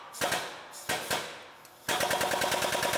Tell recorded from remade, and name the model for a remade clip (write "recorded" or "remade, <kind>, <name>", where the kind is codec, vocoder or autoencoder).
recorded